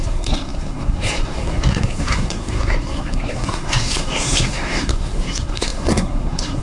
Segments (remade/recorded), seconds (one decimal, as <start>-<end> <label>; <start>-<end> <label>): 0.0-6.6 remade